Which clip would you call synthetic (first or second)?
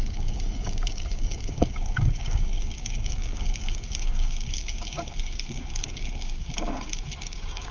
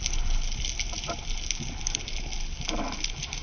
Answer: first